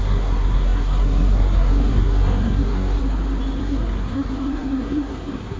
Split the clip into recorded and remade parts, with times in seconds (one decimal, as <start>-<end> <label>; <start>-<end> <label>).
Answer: 0.0-3.0 remade; 3.0-3.6 recorded; 3.6-5.6 remade